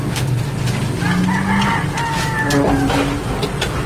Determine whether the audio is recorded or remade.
recorded